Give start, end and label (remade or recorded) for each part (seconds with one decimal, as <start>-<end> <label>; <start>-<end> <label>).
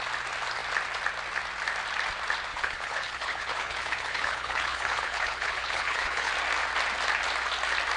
0.0-2.5 recorded; 2.5-6.3 remade; 6.3-8.0 recorded